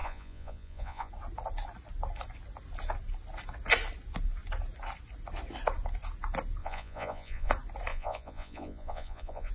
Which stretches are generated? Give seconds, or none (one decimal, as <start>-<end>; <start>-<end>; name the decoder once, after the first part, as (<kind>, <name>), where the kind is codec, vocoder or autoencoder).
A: 0.0-1.1 (vocoder, Vocos); 6.6-7.5; 7.9-9.5